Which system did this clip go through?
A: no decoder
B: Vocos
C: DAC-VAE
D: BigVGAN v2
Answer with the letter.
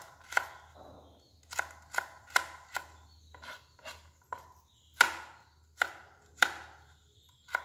A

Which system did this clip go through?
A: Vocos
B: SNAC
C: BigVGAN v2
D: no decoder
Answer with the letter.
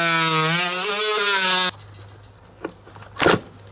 D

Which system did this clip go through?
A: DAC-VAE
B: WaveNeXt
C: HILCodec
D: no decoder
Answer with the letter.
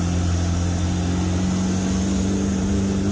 D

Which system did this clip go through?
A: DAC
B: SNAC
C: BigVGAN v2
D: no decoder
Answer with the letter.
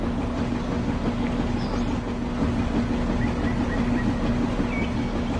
D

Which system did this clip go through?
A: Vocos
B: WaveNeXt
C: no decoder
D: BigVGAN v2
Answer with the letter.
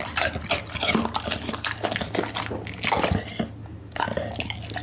C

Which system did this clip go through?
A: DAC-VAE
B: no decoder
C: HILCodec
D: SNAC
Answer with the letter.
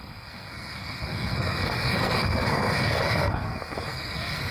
D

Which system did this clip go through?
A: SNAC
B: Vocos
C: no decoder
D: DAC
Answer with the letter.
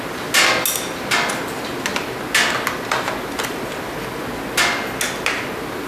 C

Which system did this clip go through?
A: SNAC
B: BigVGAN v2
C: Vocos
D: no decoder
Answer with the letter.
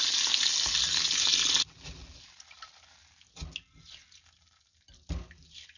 D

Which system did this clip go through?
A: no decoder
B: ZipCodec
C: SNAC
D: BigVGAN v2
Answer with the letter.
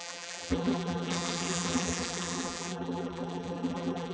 D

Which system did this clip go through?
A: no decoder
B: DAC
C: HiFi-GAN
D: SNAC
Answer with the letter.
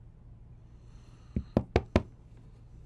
A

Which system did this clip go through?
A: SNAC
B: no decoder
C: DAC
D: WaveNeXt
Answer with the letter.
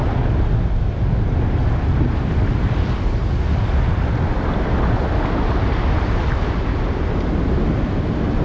B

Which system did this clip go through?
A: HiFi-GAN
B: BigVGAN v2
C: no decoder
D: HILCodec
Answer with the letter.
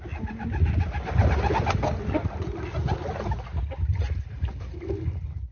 C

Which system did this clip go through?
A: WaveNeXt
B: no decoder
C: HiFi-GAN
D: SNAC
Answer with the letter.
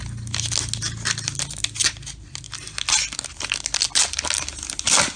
B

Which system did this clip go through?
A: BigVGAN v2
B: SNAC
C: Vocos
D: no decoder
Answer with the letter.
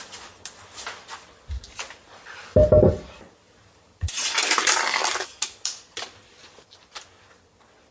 D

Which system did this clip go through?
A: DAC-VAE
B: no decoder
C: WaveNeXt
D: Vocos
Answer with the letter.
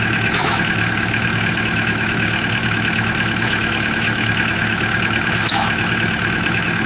A